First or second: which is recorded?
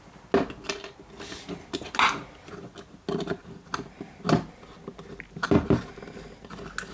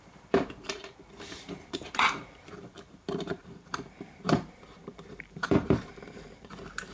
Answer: first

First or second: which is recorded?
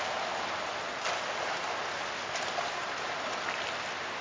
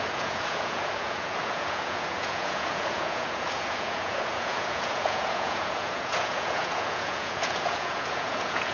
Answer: first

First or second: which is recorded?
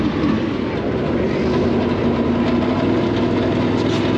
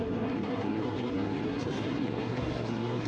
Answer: first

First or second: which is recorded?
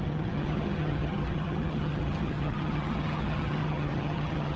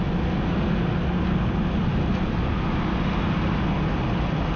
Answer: second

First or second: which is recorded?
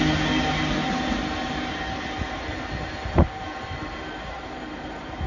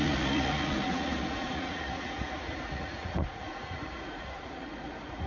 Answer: first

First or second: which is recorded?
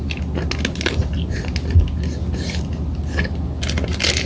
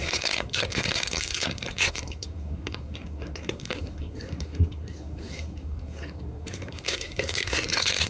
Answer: first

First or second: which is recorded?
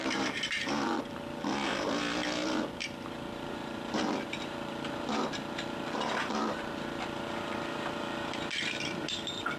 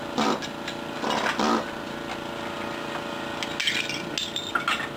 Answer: second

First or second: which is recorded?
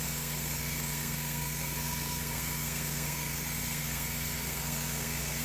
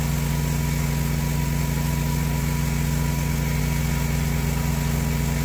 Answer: second